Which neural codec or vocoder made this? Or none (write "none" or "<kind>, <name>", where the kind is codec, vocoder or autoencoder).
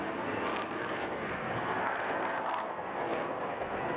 codec, SNAC